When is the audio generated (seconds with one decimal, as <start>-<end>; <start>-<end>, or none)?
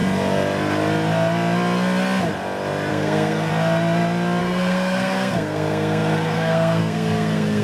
2.9-3.5; 4.4-7.6